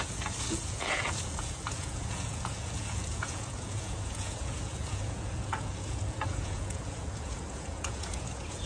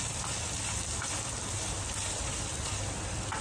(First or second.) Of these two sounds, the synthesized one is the first